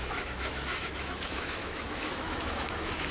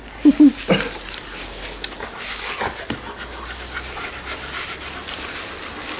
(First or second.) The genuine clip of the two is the second